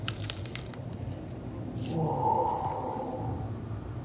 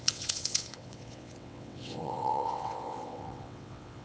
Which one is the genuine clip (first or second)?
first